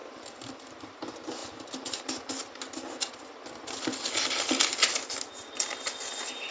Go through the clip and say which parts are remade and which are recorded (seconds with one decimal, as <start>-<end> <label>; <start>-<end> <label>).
0.0-0.6 remade; 0.6-6.5 recorded